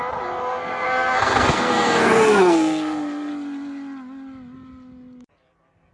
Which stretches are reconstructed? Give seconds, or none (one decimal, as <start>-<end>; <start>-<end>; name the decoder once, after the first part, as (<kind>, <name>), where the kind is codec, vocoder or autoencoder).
0.4-3.3 (codec, SNAC)